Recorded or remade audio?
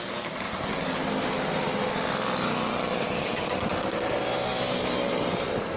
recorded